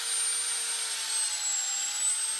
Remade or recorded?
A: recorded